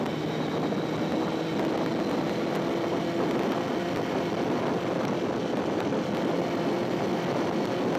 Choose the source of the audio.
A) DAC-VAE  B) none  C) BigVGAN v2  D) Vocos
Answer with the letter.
B